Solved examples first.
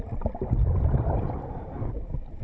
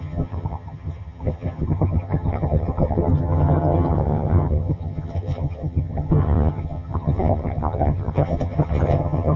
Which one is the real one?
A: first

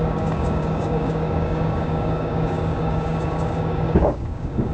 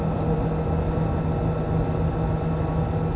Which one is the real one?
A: second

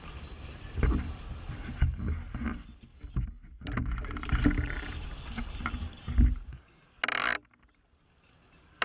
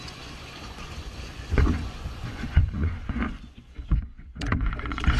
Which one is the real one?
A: first